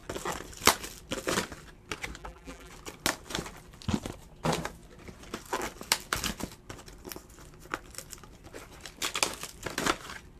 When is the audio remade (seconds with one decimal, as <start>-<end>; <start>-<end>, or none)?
2.2-2.7